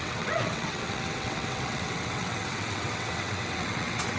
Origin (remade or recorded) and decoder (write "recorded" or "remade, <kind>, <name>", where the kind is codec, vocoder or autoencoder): remade, vocoder, WaveNeXt